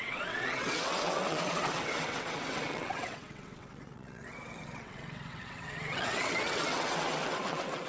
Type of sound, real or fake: fake